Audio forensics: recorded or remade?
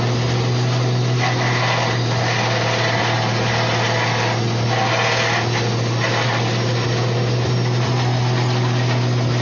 recorded